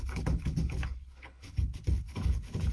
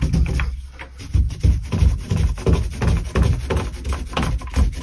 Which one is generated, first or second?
first